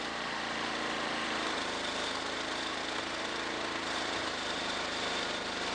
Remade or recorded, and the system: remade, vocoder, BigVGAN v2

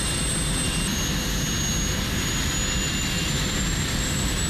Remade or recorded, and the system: recorded